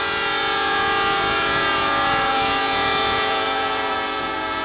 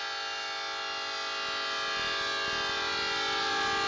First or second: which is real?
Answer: second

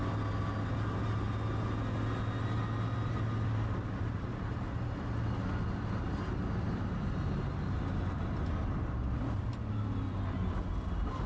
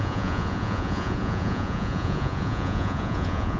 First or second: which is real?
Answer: first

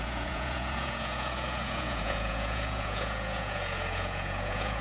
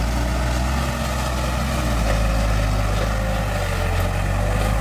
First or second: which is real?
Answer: second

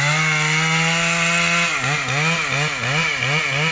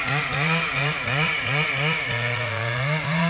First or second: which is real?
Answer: first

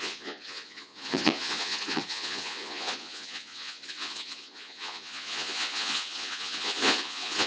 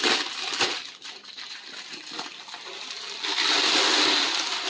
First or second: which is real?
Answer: second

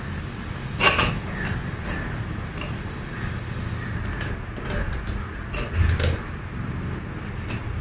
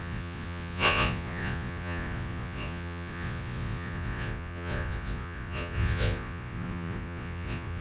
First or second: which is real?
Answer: first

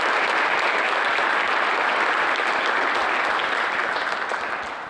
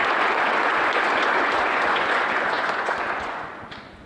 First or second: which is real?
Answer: first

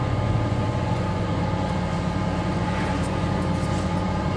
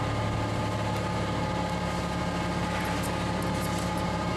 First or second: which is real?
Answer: second